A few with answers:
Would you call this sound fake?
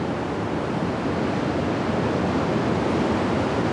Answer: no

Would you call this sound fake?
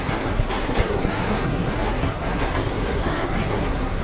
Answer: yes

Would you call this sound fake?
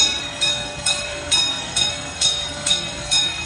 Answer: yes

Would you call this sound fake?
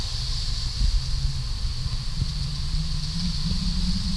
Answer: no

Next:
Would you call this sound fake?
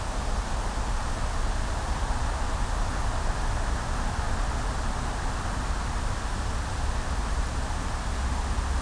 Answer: no